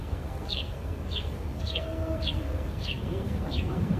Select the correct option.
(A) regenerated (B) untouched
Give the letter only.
A